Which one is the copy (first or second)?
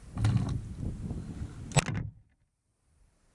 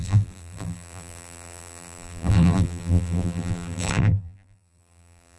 second